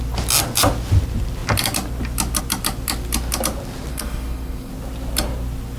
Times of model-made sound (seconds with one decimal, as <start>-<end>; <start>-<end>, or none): 3.9-4.7